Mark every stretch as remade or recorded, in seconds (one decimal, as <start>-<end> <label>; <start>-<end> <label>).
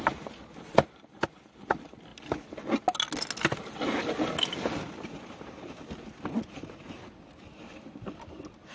0.0-8.7 recorded